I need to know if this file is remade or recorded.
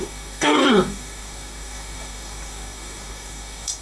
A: remade